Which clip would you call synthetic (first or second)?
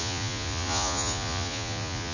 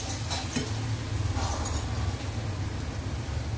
first